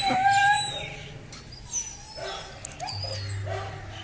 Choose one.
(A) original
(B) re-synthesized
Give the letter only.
A